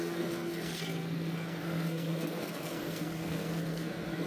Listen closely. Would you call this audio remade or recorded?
remade